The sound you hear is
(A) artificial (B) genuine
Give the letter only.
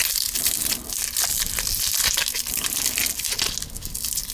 B